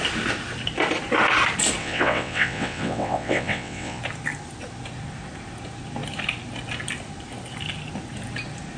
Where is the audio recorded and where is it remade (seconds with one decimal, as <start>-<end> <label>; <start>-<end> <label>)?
0.0-1.8 recorded; 1.8-4.0 remade; 4.0-8.8 recorded